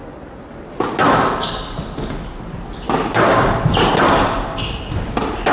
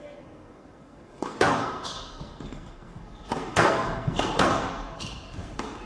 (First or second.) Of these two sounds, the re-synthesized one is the second